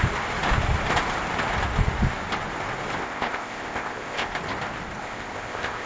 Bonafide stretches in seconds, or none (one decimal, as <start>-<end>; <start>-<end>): 0.0-3.0; 4.3-5.0